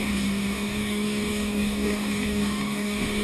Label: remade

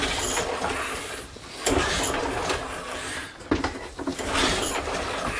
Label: recorded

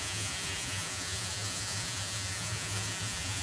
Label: remade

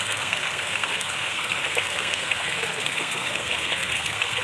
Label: remade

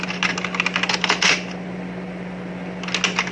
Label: recorded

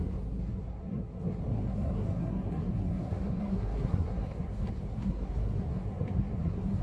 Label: remade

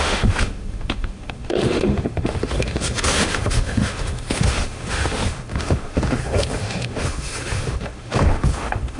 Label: remade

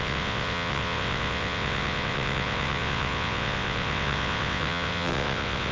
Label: remade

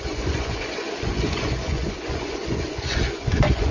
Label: remade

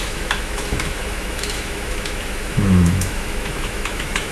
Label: remade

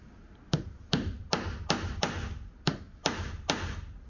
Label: recorded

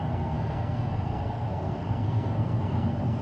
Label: remade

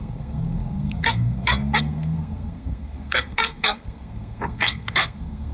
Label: remade